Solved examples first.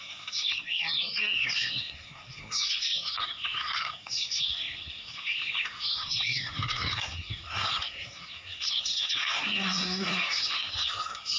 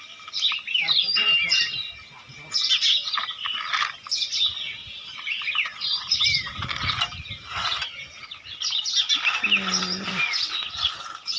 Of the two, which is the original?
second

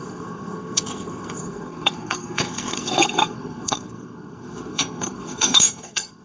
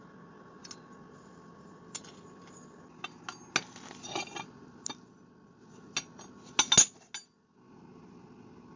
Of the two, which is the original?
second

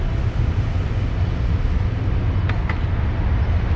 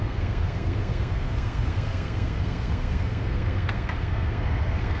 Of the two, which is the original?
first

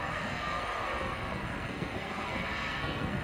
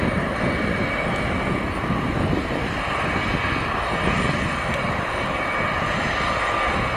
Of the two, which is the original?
second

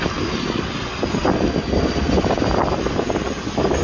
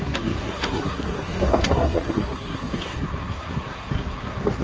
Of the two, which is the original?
first